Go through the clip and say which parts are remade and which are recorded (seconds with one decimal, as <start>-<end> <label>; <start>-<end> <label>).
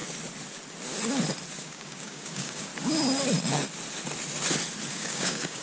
0.0-1.6 recorded; 1.6-2.7 remade; 2.7-4.9 recorded; 4.9-5.6 remade